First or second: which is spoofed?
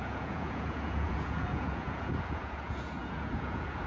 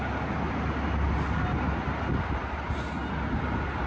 first